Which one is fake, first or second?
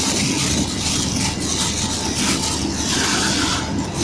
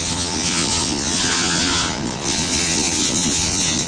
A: second